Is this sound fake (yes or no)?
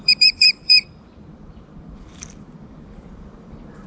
yes